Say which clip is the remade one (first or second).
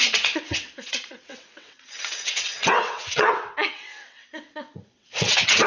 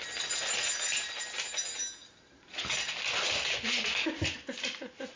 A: first